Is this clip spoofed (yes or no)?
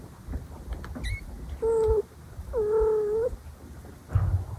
no